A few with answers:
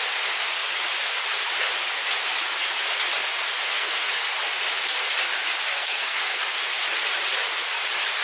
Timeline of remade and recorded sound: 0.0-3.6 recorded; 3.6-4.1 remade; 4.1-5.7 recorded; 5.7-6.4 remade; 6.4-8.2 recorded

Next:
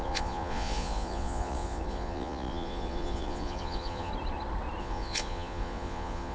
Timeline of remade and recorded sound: 0.0-4.1 remade; 4.1-4.8 recorded; 4.8-6.3 remade

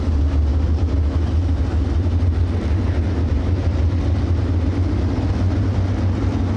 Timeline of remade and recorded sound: 0.0-6.6 recorded

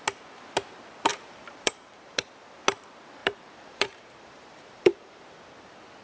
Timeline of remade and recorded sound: 0.0-1.1 recorded; 1.1-2.3 remade; 2.3-3.2 recorded; 3.2-5.2 remade; 5.2-6.0 recorded

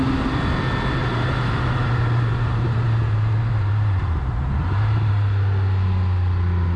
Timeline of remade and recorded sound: 0.0-1.0 recorded; 1.0-5.1 remade; 5.1-6.8 recorded

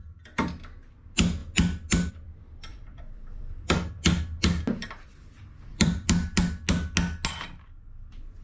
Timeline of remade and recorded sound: 0.0-2.7 recorded; 2.7-3.9 remade; 3.9-4.8 recorded; 4.8-6.4 remade; 6.4-8.4 recorded

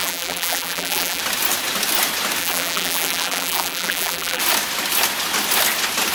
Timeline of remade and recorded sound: 0.0-1.2 remade; 1.2-2.4 recorded; 2.4-4.4 remade; 4.4-6.1 recorded

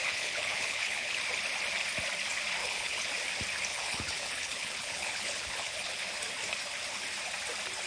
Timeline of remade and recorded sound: 0.0-1.2 remade; 1.2-2.6 recorded; 2.6-3.1 remade; 3.1-3.7 recorded; 3.7-6.1 remade; 6.1-7.9 recorded